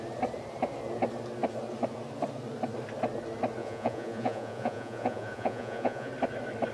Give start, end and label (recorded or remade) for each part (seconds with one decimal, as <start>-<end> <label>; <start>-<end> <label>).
0.0-3.6 recorded; 3.6-6.1 remade; 6.1-6.7 recorded